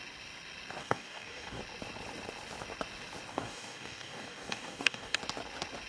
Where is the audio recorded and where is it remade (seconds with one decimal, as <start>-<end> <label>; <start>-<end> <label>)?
0.0-0.8 recorded; 0.8-1.6 remade; 1.6-3.3 recorded; 3.3-5.2 remade; 5.2-5.9 recorded